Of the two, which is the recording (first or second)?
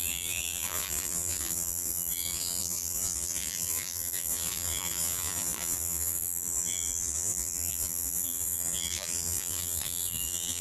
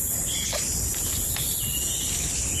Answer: second